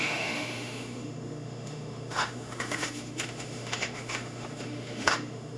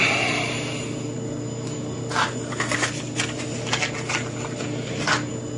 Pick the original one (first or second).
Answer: second